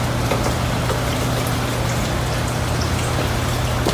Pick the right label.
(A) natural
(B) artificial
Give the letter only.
A